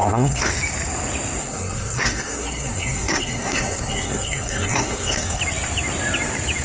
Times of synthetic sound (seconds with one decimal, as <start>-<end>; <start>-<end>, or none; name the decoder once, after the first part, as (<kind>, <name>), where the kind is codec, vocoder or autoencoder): 0.0-0.5 (codec, SNAC); 1.4-5.4